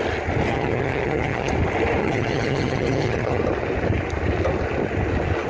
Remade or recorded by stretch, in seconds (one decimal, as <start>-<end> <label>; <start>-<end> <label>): 0.0-0.5 recorded; 0.5-1.5 remade; 1.5-2.0 recorded; 2.0-3.4 remade; 3.4-5.5 recorded